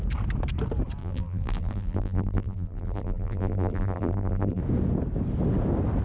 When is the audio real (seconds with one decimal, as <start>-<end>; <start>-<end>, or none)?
0.0-1.0; 4.6-6.0